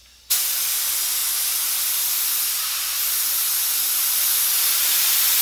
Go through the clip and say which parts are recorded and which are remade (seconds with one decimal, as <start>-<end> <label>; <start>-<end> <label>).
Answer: 0.0-5.4 recorded